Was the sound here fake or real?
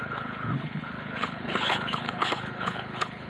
fake